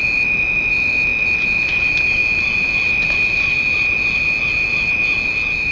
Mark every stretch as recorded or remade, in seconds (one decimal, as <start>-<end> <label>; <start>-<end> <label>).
0.0-5.7 recorded